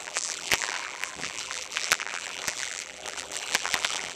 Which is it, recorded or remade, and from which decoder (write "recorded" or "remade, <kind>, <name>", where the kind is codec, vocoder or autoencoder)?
remade, vocoder, BigVGAN v2